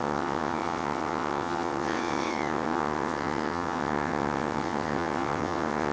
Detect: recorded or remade remade